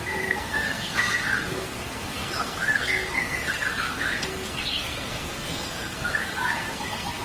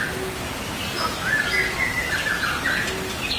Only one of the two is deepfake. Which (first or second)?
first